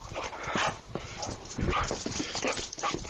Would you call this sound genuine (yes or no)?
no